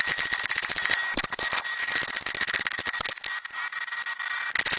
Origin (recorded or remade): recorded